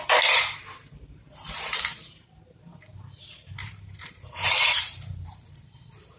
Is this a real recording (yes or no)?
no